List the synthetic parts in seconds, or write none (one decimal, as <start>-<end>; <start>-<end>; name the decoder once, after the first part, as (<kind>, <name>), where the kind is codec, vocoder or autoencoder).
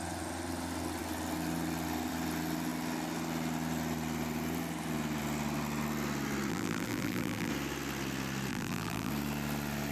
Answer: 6.5-7.5 (vocoder, BigVGAN v2); 8.5-9.1